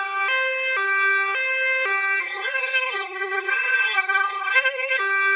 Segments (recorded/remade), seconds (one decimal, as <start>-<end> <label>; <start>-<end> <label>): 0.0-2.2 recorded; 2.2-5.0 remade; 5.0-5.4 recorded